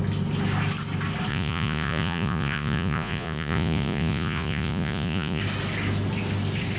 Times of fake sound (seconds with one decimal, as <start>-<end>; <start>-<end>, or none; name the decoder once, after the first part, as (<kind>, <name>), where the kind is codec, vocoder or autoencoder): 1.3-5.4 (vocoder, Vocos)